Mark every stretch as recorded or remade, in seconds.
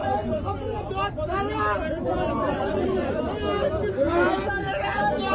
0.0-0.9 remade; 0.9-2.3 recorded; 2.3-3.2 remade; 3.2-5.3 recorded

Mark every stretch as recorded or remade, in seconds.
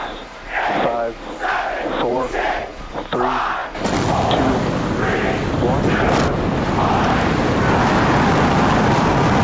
0.0-2.1 recorded; 2.1-3.0 remade; 3.0-9.4 recorded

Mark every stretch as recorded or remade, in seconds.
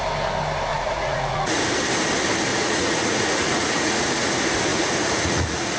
0.0-0.7 recorded; 0.7-1.6 remade; 1.6-2.5 recorded; 2.5-4.3 remade; 4.3-4.7 recorded; 4.7-5.8 remade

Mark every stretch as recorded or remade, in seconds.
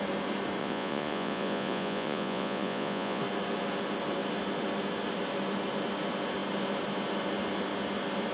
0.0-0.6 recorded; 0.6-3.2 remade; 3.2-8.3 recorded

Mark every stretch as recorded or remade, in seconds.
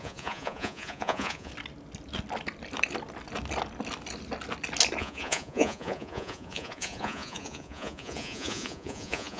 0.0-1.5 remade; 1.5-5.0 recorded; 5.0-9.4 remade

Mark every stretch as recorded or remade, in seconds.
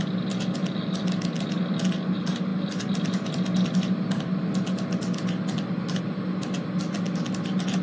0.0-7.8 recorded